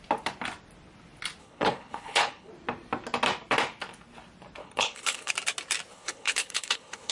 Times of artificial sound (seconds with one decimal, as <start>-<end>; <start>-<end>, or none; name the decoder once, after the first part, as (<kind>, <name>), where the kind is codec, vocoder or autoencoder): 1.4-2.5 (codec, HILCodec); 4.6-5.3; 5.9-7.1